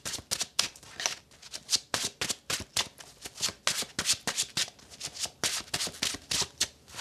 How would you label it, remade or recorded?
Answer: recorded